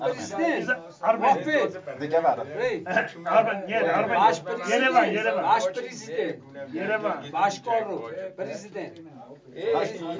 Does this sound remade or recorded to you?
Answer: recorded